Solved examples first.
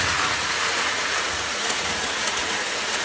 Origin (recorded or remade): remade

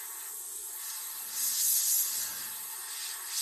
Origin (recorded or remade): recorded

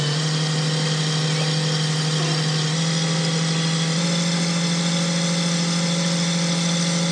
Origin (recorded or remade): recorded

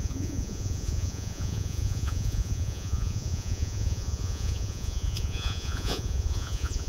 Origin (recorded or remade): remade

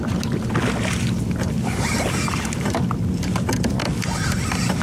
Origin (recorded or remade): recorded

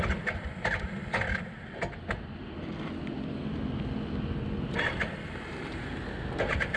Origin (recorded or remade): recorded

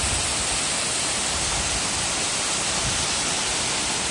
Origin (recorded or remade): recorded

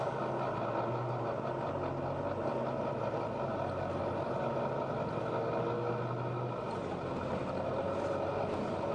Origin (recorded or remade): recorded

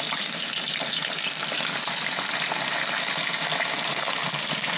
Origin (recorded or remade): recorded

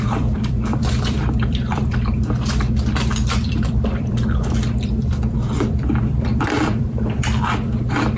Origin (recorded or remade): remade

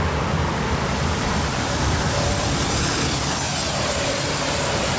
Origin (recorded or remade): remade